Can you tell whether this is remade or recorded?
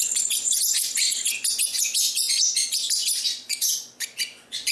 remade